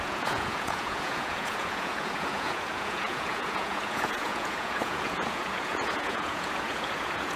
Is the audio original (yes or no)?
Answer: no